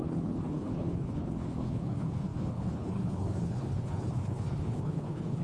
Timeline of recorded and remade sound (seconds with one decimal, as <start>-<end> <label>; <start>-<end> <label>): 0.0-5.4 remade